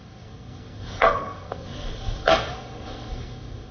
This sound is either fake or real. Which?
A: fake